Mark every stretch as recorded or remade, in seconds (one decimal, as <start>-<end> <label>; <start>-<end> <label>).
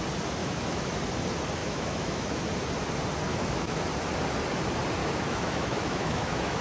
0.0-0.4 recorded; 0.4-1.0 remade; 1.0-1.6 recorded; 1.6-2.4 remade; 2.4-3.3 recorded; 3.3-3.8 remade; 3.8-5.0 recorded; 5.0-6.6 remade